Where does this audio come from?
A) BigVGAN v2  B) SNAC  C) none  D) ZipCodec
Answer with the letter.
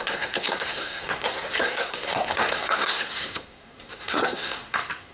B